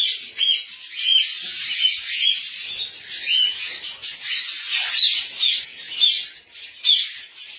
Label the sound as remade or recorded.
recorded